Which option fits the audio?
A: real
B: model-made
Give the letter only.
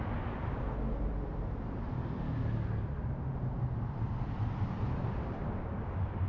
A